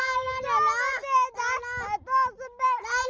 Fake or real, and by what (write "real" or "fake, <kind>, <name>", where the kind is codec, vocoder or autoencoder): real